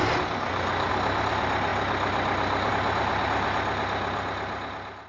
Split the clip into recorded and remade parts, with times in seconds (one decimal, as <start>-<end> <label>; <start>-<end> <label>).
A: 0.0-5.1 recorded